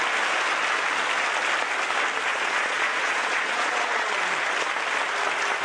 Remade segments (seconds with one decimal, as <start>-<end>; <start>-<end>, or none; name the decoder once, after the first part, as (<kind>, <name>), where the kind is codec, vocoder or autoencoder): 2.3-4.2 (vocoder, Vocos)